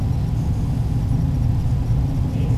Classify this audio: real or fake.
real